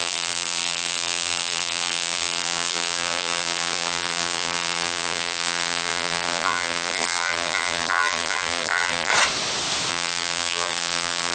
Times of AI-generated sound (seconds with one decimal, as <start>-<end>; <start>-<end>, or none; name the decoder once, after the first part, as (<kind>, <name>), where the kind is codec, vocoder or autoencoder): 0.0-9.1 (vocoder, BigVGAN v2); 9.9-11.3